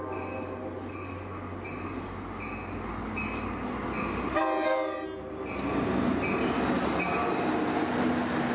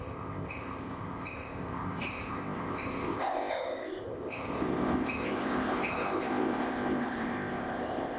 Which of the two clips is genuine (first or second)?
first